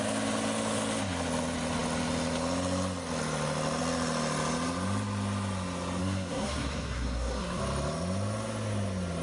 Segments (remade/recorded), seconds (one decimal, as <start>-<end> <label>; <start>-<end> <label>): 0.0-6.0 recorded; 6.0-7.6 remade; 7.6-9.2 recorded